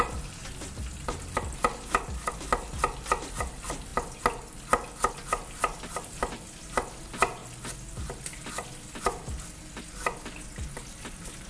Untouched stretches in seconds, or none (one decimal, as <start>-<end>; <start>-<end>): 0.0-11.5